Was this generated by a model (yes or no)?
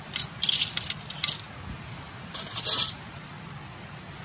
no